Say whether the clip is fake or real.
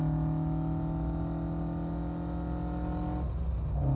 real